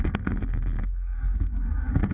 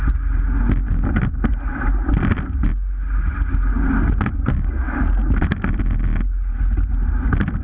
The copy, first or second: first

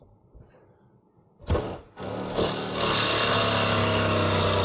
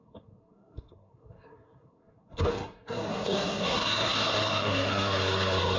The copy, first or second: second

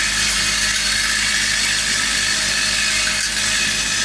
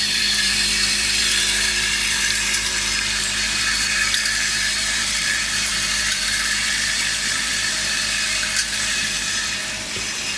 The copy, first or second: second